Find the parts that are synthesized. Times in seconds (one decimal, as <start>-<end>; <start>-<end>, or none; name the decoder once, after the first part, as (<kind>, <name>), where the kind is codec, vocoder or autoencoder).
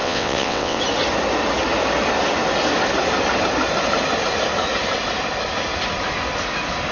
0.0-0.8 (vocoder, WaveNeXt)